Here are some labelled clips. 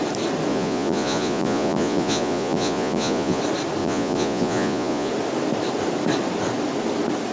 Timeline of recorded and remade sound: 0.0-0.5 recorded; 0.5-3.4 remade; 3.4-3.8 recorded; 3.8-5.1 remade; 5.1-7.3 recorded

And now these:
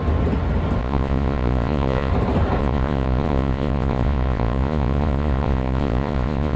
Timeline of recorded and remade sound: 0.0-0.8 recorded; 0.8-2.1 remade; 2.1-2.6 recorded; 2.6-6.6 remade

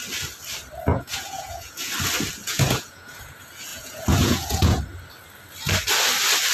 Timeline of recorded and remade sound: 0.0-0.9 recorded; 0.9-1.9 remade; 1.9-2.4 recorded; 2.4-3.2 remade; 3.2-3.7 recorded; 3.7-4.8 remade; 4.8-6.5 recorded

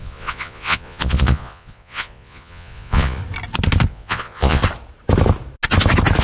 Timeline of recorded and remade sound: 0.0-3.2 remade; 3.2-3.9 recorded; 3.9-4.6 remade; 4.6-6.2 recorded

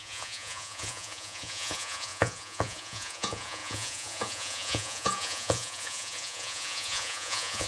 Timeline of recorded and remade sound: 0.0-7.7 remade

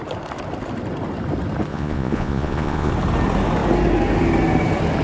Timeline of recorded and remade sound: 0.0-1.7 recorded; 1.7-2.9 remade; 2.9-5.0 recorded